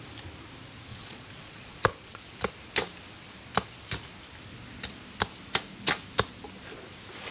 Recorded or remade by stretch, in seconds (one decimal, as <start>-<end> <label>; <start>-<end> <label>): 0.0-0.9 recorded; 0.9-2.4 remade; 2.4-7.3 recorded